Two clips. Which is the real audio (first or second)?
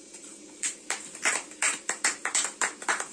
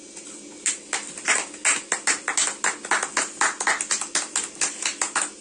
second